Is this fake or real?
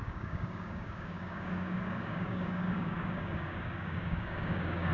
fake